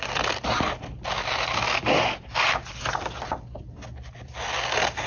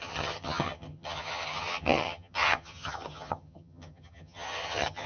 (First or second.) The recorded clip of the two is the first